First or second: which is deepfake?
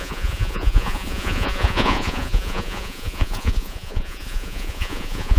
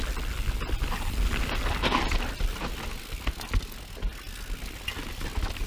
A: first